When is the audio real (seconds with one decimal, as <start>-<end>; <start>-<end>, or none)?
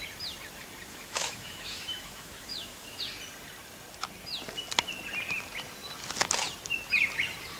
0.0-0.9; 3.0-7.6